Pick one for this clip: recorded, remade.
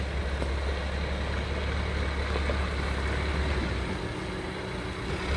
recorded